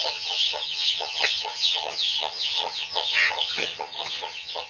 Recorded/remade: remade